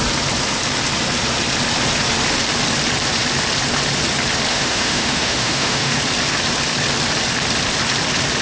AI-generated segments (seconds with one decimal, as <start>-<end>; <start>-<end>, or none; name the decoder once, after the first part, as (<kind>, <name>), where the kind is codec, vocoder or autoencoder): 4.5-6.0 (autoencoder, DAC-VAE)